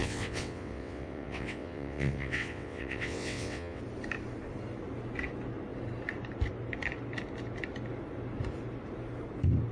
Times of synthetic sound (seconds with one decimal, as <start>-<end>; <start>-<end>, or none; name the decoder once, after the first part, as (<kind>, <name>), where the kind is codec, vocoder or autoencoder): 0.0-3.8 (vocoder, WaveNeXt)

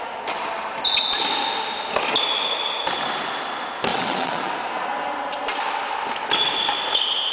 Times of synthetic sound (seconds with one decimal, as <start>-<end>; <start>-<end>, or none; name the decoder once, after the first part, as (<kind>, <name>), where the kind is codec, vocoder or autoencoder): 3.9-4.5 (vocoder, WaveNeXt)